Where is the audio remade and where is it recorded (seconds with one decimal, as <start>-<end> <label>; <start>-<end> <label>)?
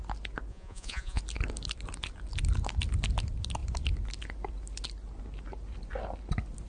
0.0-0.5 recorded; 0.5-1.2 remade; 1.2-6.7 recorded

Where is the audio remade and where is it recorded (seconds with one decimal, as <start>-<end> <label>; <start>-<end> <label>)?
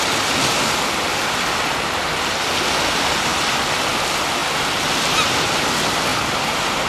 0.0-6.1 recorded; 6.1-6.9 remade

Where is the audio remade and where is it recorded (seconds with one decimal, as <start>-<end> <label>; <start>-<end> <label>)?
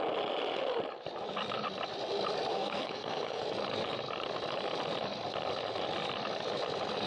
0.0-2.5 recorded; 2.5-3.4 remade; 3.4-7.1 recorded